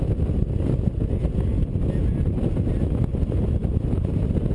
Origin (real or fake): real